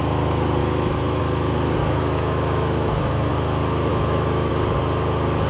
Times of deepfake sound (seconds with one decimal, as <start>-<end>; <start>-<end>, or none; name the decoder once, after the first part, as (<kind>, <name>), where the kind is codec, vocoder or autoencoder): 0.6-1.2 (autoencoder, DAC-VAE); 1.8-3.3; 3.9-4.5

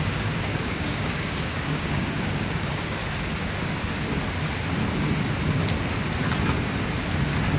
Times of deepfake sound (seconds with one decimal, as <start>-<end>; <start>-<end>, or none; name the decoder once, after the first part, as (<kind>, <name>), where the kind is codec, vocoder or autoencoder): 0.0-3.0 (codec, DAC)